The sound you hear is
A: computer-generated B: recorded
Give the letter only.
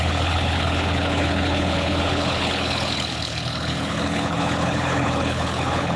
A